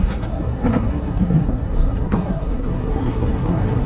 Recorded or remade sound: remade